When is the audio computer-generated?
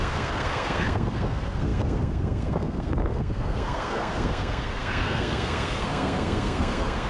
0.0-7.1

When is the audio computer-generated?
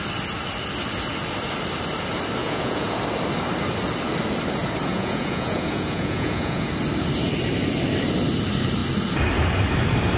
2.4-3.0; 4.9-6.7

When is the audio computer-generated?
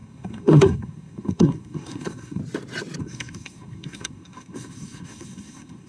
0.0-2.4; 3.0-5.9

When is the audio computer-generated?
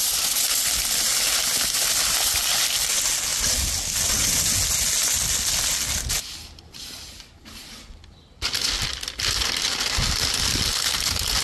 none